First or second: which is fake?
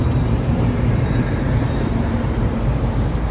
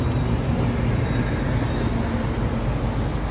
first